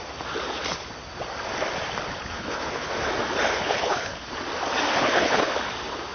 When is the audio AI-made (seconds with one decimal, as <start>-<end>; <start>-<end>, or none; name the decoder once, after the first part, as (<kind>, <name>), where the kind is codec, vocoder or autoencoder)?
2.3-2.9 (codec, HILCodec); 3.5-4.3; 4.9-5.5